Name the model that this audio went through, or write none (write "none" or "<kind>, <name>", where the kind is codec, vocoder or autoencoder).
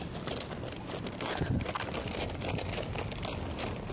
none